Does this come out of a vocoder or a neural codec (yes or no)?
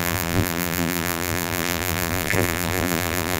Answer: yes